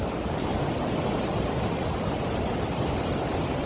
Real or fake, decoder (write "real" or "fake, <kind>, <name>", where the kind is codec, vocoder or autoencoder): real